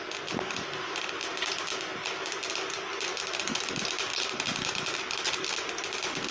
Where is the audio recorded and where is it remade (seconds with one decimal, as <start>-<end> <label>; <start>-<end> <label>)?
0.0-3.1 recorded; 3.1-5.4 remade; 5.4-6.3 recorded